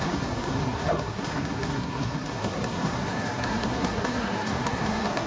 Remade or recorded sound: remade